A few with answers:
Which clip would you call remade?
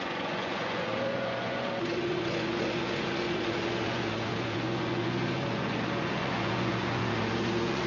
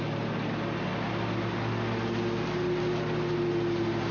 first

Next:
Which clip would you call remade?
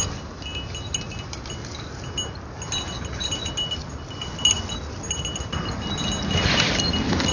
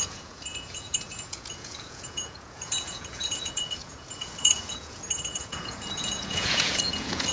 second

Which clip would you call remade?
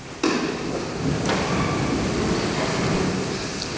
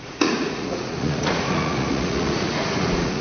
second